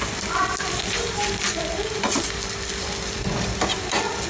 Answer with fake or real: fake